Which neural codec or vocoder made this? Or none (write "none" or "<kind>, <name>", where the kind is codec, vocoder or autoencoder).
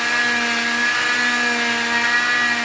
none